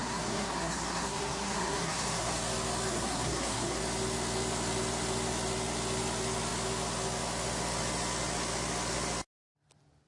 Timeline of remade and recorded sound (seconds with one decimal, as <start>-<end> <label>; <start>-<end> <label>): 0.0-2.3 remade; 2.3-2.9 recorded; 2.9-3.8 remade; 3.8-10.1 recorded